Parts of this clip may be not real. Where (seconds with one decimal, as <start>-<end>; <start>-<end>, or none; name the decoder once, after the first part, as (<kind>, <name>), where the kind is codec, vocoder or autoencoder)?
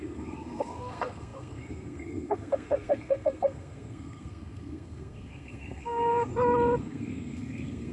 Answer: 0.0-6.3 (codec, SNAC); 6.8-7.9